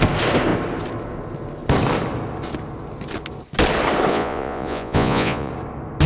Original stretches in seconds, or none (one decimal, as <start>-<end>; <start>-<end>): 0.0-4.1; 5.5-6.1